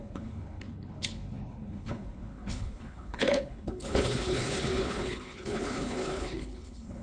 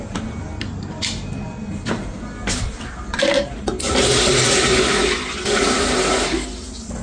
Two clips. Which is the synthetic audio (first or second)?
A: first